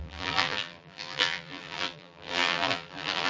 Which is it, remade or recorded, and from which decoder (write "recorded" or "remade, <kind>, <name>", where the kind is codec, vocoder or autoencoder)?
remade, vocoder, BigVGAN v2